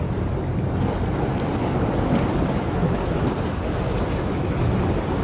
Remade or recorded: recorded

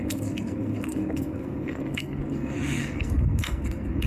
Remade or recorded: remade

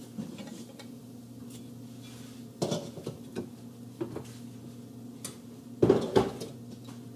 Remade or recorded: recorded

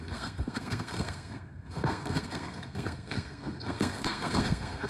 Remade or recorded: remade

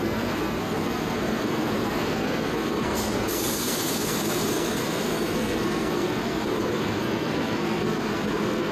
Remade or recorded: remade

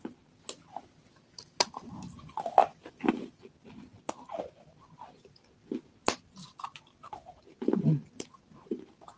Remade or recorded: recorded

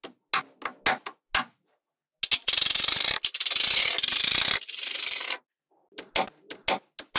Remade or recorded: recorded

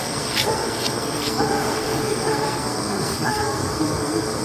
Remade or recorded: remade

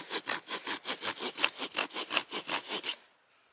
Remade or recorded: recorded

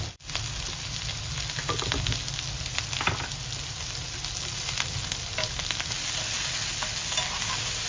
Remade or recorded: recorded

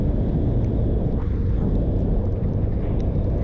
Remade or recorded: recorded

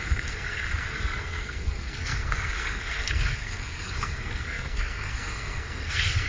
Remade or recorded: remade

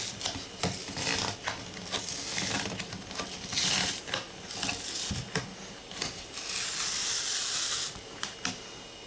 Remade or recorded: recorded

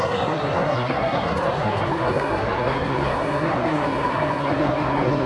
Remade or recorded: remade